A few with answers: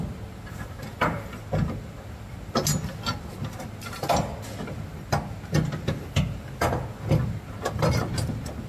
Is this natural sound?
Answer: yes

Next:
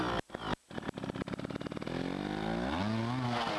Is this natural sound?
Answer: yes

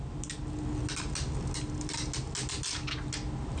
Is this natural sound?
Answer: yes